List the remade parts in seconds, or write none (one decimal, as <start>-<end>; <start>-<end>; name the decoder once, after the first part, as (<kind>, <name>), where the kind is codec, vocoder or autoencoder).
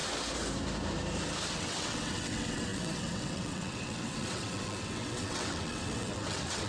1.5-6.7 (vocoder, WaveNeXt)